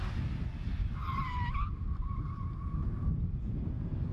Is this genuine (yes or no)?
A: yes